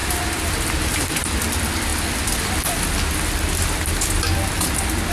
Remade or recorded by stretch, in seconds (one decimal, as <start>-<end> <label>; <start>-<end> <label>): 0.0-0.5 remade; 0.5-1.9 recorded; 1.9-2.6 remade; 2.6-5.1 recorded